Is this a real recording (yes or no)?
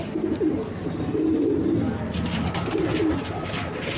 yes